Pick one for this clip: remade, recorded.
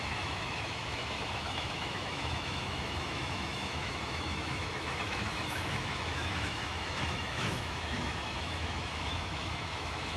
remade